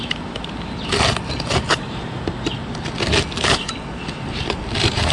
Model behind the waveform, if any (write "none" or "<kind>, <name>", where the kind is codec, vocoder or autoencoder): none